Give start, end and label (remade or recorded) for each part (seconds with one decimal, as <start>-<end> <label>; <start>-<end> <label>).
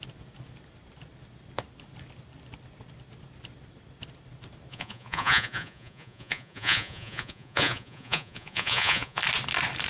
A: 0.0-4.7 recorded; 4.7-9.2 remade; 9.2-9.9 recorded